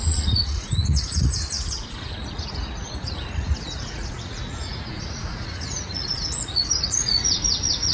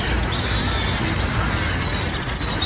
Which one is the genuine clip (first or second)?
second